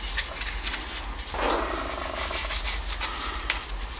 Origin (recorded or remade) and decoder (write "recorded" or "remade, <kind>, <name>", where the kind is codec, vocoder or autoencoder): recorded